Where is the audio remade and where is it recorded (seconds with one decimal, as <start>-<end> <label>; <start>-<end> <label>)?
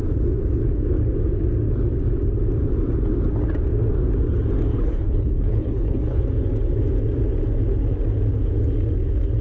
0.0-4.7 recorded; 4.7-6.2 remade; 6.2-9.4 recorded